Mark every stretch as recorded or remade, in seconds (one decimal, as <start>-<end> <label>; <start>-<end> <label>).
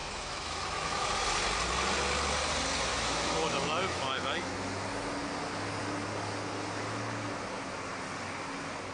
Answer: 0.0-1.1 remade; 1.1-2.9 recorded; 2.9-4.5 remade; 4.5-8.9 recorded